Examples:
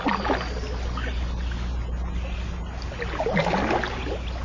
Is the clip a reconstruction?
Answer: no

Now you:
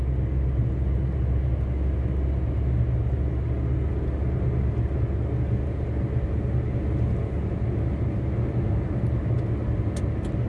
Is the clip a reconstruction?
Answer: no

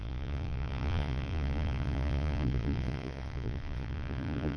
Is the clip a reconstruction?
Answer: yes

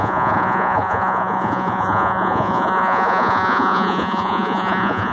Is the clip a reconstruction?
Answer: yes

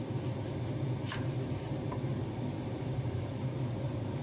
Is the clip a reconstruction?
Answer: no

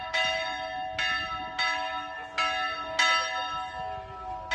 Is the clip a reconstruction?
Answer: no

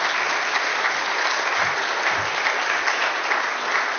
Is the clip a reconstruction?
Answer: no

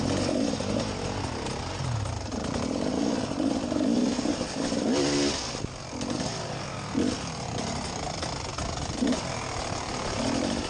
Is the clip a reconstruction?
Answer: no